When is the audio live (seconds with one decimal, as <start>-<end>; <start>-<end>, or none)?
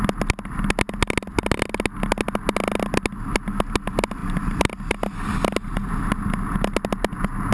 0.0-7.5